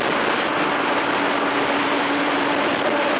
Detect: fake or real real